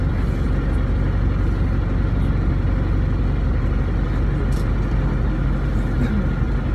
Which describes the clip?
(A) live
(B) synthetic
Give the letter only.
A